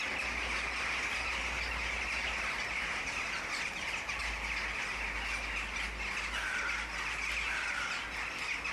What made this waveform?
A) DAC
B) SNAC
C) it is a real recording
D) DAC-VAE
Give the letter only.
C